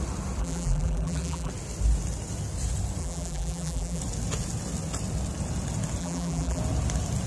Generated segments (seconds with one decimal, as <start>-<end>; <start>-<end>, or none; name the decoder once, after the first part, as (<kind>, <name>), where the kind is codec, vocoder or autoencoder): 0.4-1.5 (vocoder, BigVGAN v2); 3.0-4.0; 6.0-6.6